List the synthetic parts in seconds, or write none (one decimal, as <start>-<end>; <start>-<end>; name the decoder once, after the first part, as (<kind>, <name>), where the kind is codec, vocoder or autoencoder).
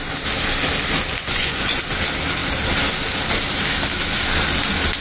1.1-1.8 (vocoder, Vocos)